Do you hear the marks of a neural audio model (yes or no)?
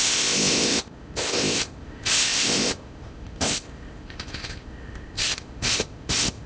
yes